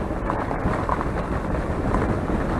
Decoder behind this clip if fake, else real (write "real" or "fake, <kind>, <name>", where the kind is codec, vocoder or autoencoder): real